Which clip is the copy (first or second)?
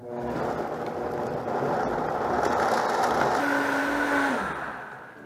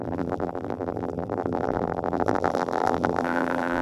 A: second